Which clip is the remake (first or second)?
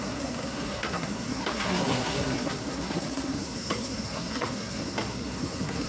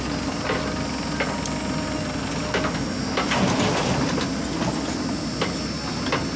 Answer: first